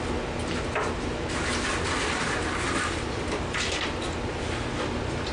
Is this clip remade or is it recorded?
recorded